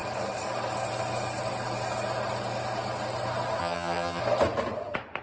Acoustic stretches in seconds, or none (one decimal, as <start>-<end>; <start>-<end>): 0.0-3.6; 4.2-5.2